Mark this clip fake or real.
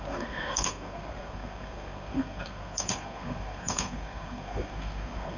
fake